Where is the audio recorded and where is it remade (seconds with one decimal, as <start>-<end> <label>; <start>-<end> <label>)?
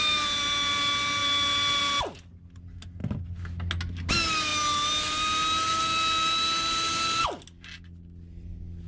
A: 0.0-8.9 recorded